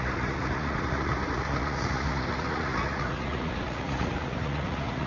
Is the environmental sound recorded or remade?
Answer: remade